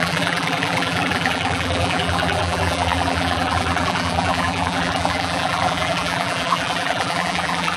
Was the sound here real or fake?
fake